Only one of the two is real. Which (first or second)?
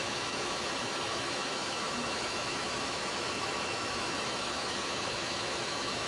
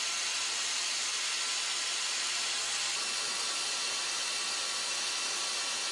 second